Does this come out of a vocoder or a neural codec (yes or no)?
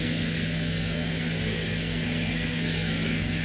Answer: yes